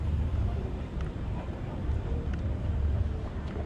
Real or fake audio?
fake